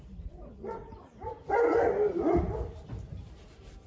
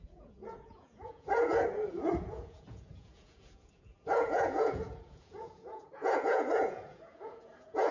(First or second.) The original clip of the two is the first